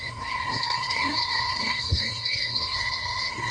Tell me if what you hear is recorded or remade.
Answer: remade